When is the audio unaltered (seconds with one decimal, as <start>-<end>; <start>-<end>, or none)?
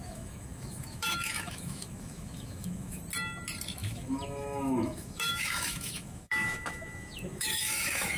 3.0-3.8